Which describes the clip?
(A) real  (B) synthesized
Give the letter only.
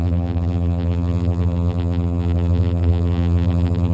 B